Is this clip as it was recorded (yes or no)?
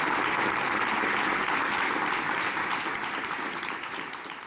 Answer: yes